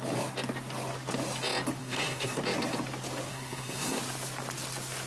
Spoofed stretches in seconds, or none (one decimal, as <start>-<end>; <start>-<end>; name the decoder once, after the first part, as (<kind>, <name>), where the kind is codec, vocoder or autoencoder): 1.8-2.4 (codec, SNAC); 3.3-4.0